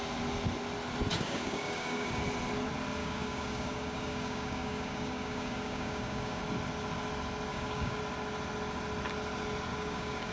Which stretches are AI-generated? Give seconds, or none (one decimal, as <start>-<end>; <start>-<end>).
1.1-2.2; 3.0-6.4; 7.5-8.0; 9.7-10.3